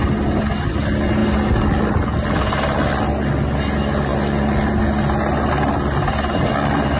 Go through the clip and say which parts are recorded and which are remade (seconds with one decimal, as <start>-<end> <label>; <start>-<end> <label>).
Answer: 0.0-7.0 recorded